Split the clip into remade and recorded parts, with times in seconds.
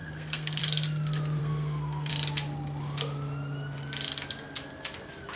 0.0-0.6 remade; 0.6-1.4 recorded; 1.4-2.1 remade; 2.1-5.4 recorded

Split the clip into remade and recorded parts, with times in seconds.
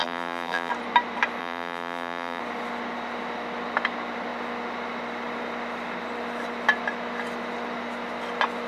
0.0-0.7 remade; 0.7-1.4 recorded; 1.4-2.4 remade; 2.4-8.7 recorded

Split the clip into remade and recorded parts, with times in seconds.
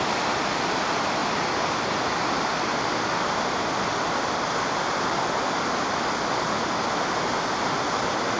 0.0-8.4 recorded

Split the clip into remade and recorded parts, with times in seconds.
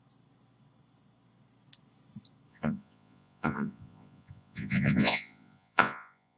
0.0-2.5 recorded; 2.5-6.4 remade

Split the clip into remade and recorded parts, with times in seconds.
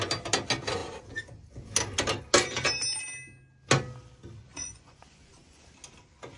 0.0-4.5 recorded; 4.5-5.7 remade; 5.7-6.4 recorded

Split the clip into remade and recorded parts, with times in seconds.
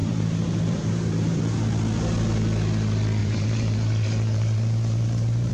0.0-1.4 remade; 1.4-3.2 recorded; 3.2-5.5 remade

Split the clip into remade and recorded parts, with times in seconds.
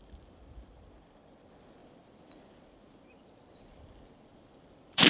0.0-1.8 recorded; 1.8-5.1 remade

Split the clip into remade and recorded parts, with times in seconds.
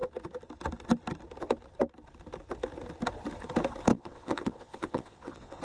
0.0-3.9 recorded; 3.9-5.6 remade